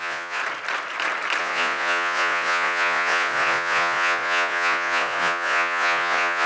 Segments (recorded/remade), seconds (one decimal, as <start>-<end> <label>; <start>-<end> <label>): 0.0-0.4 remade; 0.4-1.4 recorded; 1.4-6.5 remade

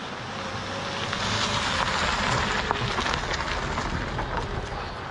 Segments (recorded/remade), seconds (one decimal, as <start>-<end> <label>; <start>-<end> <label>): 0.0-5.1 recorded

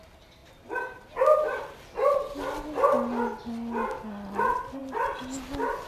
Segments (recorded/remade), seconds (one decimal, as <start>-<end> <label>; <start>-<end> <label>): 0.0-5.9 recorded

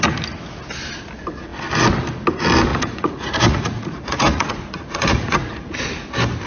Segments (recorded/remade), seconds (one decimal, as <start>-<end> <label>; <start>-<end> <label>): 0.0-2.7 recorded; 2.7-5.8 remade; 5.8-6.5 recorded